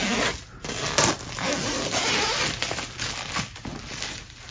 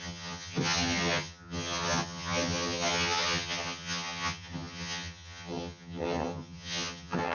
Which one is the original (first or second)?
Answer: first